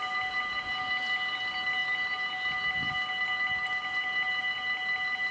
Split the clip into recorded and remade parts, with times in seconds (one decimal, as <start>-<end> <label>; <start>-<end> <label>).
0.0-5.3 recorded